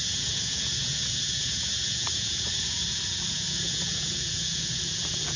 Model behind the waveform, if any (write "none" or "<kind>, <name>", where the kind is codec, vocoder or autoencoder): vocoder, Vocos